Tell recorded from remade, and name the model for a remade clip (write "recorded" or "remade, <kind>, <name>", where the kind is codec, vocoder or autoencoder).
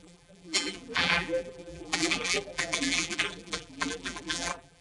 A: remade, vocoder, BigVGAN v2